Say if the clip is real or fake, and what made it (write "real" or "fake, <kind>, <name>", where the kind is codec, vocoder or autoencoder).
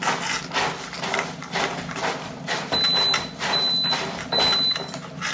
real